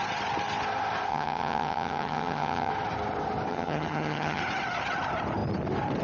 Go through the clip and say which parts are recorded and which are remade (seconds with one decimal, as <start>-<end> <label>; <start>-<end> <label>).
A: 0.0-1.1 recorded; 1.1-2.7 remade; 2.7-3.5 recorded; 3.5-4.4 remade; 4.4-6.0 recorded

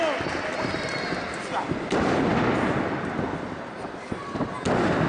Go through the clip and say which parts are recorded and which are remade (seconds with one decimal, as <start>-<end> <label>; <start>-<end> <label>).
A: 0.0-5.1 recorded

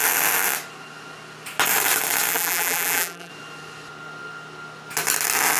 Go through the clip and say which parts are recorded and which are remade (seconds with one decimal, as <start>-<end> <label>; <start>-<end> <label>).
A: 0.0-2.3 recorded; 2.3-3.3 remade; 3.3-5.6 recorded

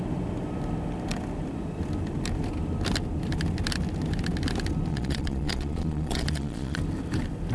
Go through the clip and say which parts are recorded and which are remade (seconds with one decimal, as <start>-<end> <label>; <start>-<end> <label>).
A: 0.0-4.9 recorded; 4.9-6.8 remade; 6.8-7.5 recorded

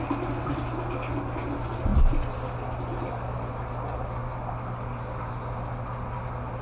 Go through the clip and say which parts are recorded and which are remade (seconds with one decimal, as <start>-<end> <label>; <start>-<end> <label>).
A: 0.0-6.6 recorded

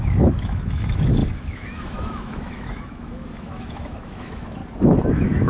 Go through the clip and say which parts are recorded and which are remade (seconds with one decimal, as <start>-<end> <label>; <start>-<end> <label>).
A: 0.0-4.6 remade; 4.6-5.1 recorded; 5.1-5.5 remade

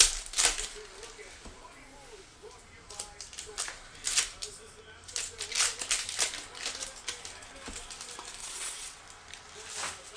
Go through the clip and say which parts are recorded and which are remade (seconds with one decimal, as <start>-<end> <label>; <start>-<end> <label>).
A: 0.0-8.4 recorded; 8.4-9.0 remade; 9.0-10.2 recorded